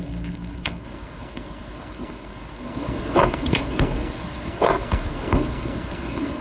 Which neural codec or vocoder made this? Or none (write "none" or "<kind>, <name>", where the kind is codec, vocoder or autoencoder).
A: codec, SNAC